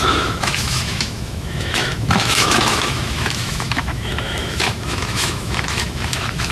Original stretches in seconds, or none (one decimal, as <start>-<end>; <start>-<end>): none